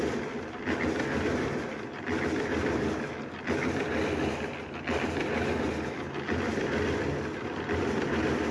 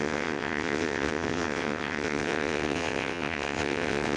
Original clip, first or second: first